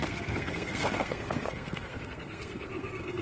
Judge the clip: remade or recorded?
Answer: remade